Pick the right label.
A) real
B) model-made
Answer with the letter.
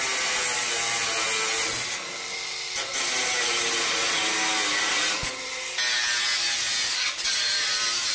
A